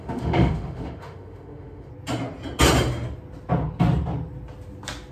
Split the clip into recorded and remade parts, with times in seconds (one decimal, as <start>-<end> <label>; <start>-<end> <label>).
0.0-1.9 remade; 1.9-5.1 recorded